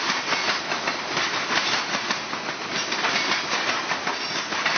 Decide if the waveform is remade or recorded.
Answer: recorded